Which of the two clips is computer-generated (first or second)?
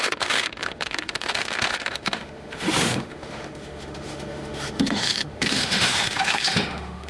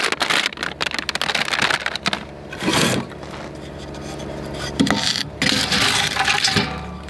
first